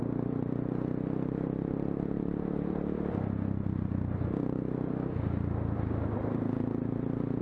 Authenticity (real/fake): real